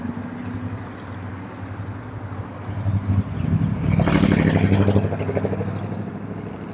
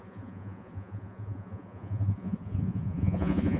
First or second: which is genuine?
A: first